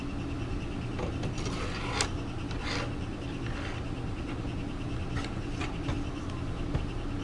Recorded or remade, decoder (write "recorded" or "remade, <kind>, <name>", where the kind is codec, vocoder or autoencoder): recorded